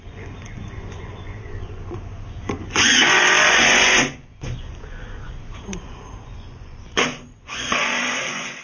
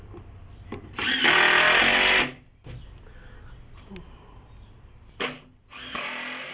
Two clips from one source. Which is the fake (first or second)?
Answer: first